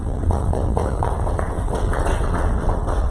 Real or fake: fake